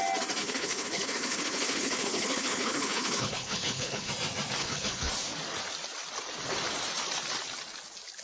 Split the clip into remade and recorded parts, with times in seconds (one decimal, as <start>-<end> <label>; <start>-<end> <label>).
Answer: 0.0-0.4 recorded; 0.4-4.1 remade; 4.1-4.6 recorded; 4.6-5.1 remade; 5.1-8.2 recorded